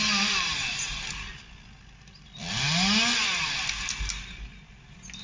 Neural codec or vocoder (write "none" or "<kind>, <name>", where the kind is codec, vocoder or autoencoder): none